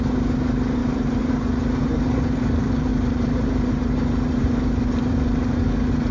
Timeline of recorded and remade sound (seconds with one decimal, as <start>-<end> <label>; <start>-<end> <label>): 0.0-6.1 remade